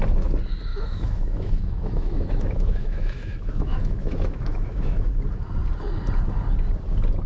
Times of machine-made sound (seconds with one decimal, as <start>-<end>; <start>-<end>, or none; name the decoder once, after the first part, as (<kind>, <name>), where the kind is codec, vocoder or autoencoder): 0.7-5.1 (autoencoder, DAC-VAE)